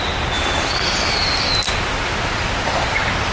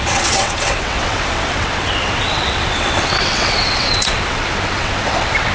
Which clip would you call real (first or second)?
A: first